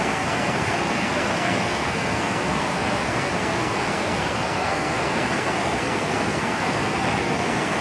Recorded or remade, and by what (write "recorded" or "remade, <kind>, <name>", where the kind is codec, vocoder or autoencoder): remade, codec, SNAC